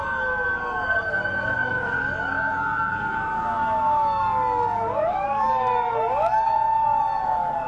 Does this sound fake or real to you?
fake